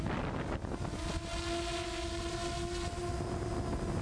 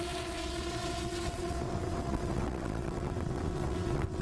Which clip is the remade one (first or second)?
second